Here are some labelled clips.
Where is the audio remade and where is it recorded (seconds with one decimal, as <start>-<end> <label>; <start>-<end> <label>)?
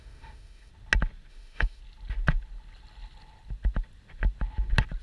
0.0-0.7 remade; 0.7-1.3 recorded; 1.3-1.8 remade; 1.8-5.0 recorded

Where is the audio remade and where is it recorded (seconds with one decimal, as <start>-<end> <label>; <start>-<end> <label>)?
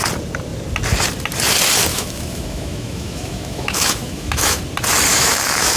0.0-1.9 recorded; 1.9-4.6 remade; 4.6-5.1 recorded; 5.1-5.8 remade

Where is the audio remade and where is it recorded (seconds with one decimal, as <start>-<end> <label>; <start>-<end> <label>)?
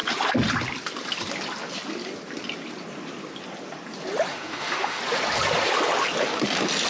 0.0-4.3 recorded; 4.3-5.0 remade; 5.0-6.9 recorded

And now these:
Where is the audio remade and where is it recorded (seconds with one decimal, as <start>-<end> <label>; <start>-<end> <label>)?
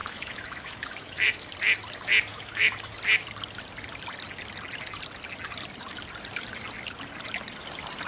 0.0-1.5 remade; 1.5-2.3 recorded; 2.3-2.9 remade; 2.9-8.1 recorded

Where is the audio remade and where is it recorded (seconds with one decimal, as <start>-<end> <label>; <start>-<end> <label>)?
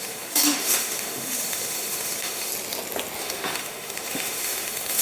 0.0-2.5 remade; 2.5-3.2 recorded; 3.2-5.0 remade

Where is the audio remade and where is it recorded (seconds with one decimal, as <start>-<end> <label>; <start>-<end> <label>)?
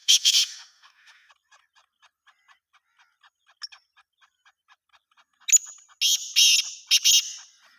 0.0-1.3 remade; 1.3-7.8 recorded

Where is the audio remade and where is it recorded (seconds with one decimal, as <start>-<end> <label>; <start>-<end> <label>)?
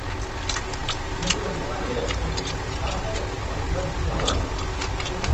0.0-5.3 recorded